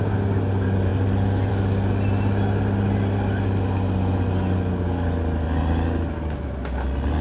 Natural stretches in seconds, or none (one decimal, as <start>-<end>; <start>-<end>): 0.0-7.2